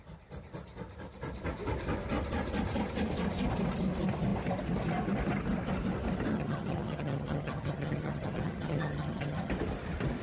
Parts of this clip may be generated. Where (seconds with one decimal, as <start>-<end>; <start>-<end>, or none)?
6.3-9.5